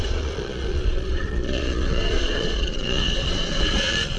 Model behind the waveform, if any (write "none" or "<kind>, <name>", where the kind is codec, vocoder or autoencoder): vocoder, Vocos